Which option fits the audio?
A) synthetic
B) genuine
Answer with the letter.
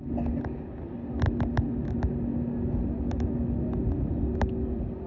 B